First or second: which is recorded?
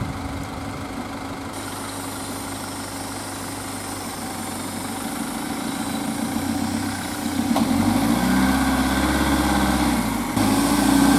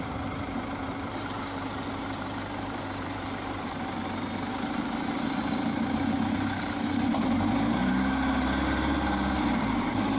first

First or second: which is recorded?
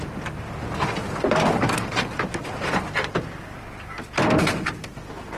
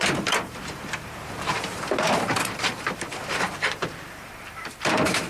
first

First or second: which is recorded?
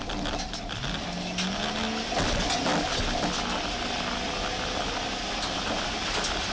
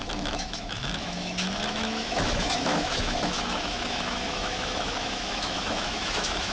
first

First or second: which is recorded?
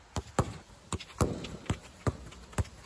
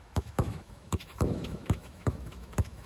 first